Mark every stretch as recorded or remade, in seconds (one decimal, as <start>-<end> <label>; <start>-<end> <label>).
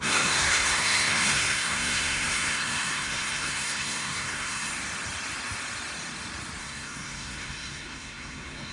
0.0-4.7 remade; 4.7-6.6 recorded; 6.6-8.7 remade